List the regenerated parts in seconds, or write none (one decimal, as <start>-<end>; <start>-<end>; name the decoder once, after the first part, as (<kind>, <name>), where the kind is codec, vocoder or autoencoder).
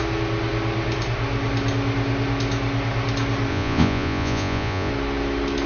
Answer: 3.5-4.9 (vocoder, Vocos)